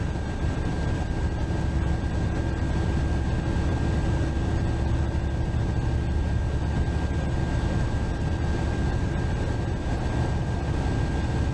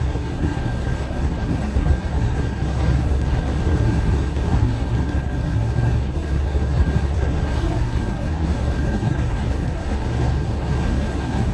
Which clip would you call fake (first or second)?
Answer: second